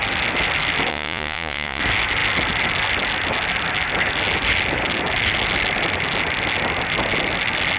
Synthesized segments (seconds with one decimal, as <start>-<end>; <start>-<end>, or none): 0.9-1.8